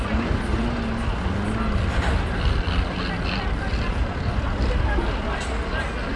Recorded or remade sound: recorded